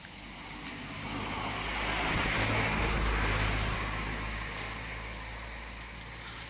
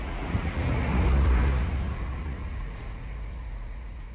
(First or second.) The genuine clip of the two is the first